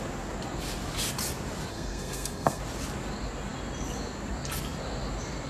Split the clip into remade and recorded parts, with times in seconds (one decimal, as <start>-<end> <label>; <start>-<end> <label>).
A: 0.0-1.7 recorded; 1.7-2.6 remade; 2.6-5.5 recorded